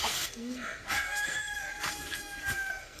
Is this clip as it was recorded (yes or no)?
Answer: no